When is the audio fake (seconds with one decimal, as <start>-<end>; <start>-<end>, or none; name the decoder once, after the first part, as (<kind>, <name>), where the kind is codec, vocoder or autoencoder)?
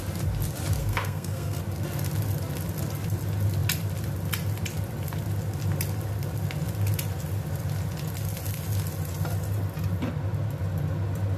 0.8-1.6 (codec, SNAC)